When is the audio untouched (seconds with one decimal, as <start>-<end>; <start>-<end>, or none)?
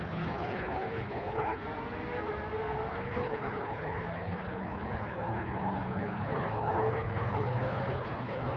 1.6-2.9